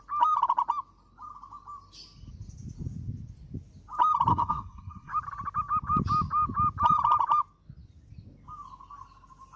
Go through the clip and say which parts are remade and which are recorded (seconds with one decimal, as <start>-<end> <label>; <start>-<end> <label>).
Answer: 0.0-4.3 recorded; 4.3-5.1 remade; 5.1-9.6 recorded